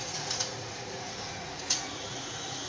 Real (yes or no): no